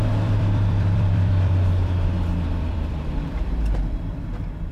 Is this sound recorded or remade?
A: remade